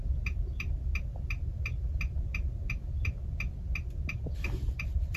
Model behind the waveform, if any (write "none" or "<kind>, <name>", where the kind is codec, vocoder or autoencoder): none